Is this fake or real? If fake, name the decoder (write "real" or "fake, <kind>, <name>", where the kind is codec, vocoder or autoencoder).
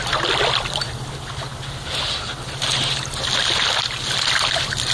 real